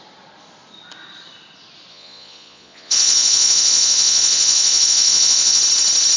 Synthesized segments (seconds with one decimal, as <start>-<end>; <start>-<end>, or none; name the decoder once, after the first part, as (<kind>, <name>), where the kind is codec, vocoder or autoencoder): 1.9-5.6 (vocoder, Vocos)